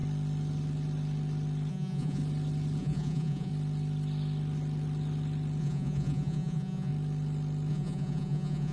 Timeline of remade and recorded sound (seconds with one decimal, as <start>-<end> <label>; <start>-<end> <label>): 0.0-1.7 recorded; 1.7-2.2 remade; 2.2-2.8 recorded; 2.8-3.5 remade; 3.5-5.6 recorded; 5.6-6.9 remade; 6.9-7.7 recorded; 7.7-8.7 remade